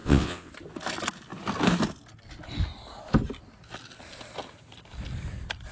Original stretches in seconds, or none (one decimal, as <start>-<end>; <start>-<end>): 0.5-5.7